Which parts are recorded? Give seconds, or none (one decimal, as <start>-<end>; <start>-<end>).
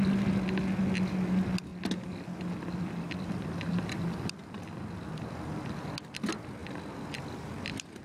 0.0-6.6